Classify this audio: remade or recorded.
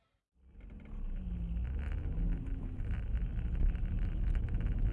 recorded